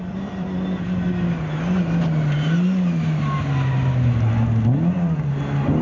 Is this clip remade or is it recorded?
recorded